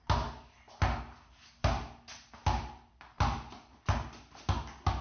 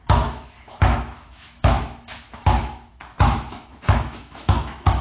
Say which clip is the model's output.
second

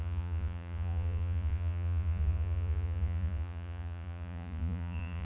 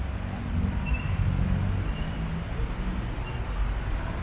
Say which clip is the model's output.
first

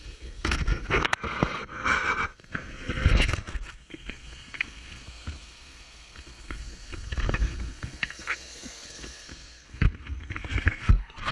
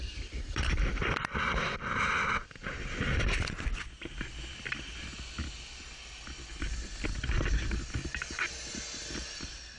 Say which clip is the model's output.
first